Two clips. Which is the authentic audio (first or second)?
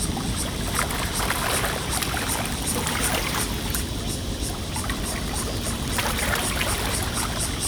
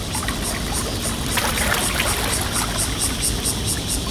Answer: second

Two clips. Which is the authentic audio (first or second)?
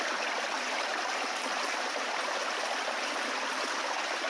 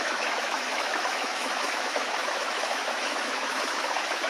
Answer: first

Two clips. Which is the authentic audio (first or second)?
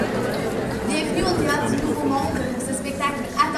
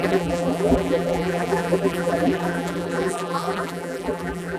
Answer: first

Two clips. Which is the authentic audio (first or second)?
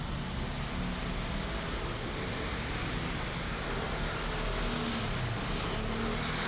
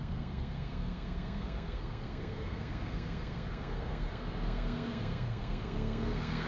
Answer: first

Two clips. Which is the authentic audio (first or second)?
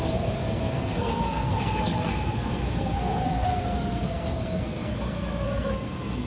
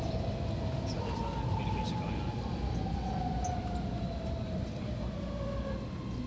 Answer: second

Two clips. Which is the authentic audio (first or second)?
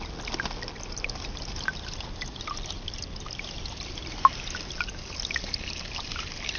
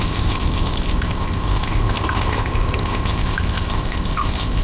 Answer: first